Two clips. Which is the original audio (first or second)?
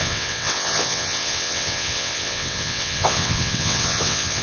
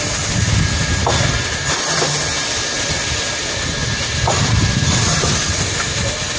second